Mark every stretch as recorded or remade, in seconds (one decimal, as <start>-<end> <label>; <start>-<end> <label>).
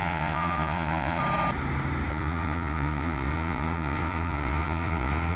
0.0-1.2 remade; 1.2-2.1 recorded; 2.1-5.4 remade